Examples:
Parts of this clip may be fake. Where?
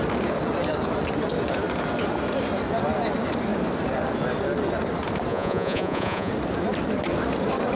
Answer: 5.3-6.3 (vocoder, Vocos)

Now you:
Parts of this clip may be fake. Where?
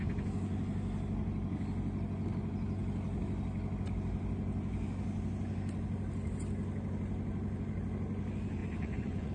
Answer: 8.6-9.3 (vocoder, Vocos)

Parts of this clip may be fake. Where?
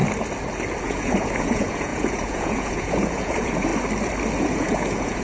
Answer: 0.8-3.7 (vocoder, Vocos); 4.4-5.2